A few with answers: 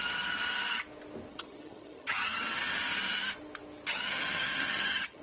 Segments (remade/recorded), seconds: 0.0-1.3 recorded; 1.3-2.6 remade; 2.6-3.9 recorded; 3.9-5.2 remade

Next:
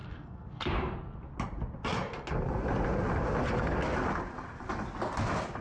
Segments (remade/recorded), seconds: 0.0-0.6 remade; 0.6-5.6 recorded